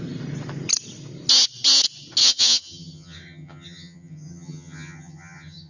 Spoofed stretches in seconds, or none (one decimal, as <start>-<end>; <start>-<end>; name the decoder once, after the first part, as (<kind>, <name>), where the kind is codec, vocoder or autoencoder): 2.2-5.7 (vocoder, HiFi-GAN)

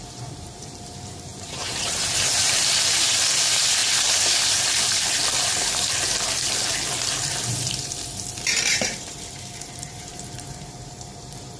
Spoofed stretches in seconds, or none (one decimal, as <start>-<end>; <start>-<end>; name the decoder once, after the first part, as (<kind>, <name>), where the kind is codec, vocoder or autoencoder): 0.0-5.2 (vocoder, BigVGAN v2); 7.4-11.6

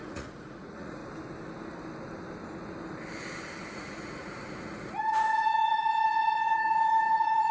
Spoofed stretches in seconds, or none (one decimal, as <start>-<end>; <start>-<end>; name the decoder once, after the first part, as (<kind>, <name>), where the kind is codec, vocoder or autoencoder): 0.0-1.0 (vocoder, Vocos); 3.7-7.5

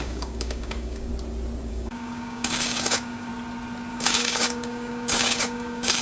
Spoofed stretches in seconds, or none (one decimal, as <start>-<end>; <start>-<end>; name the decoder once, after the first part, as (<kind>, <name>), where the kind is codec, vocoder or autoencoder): 0.0-1.1 (codec, DAC); 1.7-3.3; 3.9-6.0

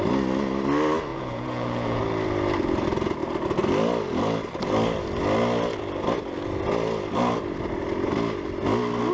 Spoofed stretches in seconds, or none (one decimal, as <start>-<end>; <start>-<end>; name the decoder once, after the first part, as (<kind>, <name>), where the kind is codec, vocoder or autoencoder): 1.1-2.0 (vocoder, Vocos)

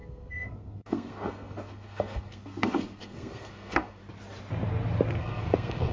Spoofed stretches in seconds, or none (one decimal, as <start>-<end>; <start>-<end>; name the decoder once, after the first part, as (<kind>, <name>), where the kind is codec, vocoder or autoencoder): 0.0-4.0 (codec, SNAC); 5.2-5.9